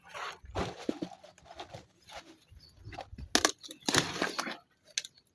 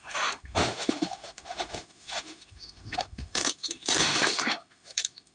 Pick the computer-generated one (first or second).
second